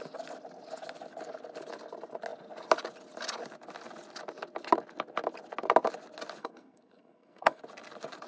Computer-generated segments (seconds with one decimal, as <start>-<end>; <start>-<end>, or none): 6.4-7.6